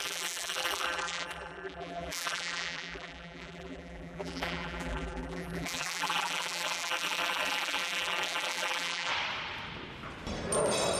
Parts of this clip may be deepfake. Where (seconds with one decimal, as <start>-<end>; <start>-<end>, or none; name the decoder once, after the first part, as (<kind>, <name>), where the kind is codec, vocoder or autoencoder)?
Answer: 0.0-9.1 (vocoder, BigVGAN v2)